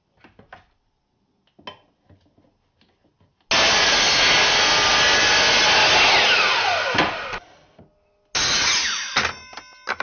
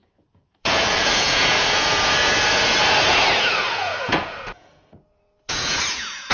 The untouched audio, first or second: first